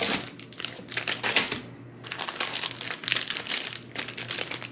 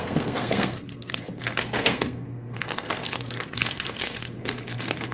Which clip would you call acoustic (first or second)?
first